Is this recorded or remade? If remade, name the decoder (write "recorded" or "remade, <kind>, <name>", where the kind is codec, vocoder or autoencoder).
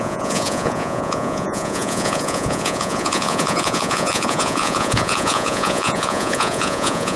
remade, vocoder, Vocos